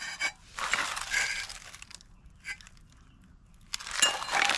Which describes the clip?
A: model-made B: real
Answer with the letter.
B